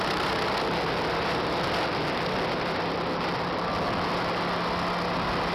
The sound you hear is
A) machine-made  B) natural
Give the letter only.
B